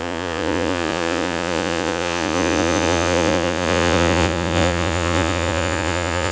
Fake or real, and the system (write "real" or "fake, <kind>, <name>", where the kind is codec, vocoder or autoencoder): fake, vocoder, Vocos